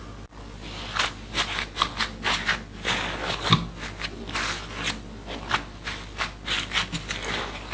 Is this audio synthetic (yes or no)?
no